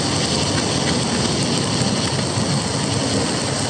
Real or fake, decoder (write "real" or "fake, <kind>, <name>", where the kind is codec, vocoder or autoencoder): real